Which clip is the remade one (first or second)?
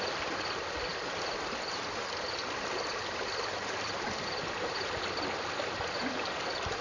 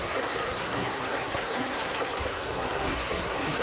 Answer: second